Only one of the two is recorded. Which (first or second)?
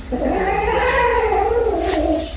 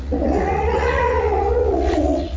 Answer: first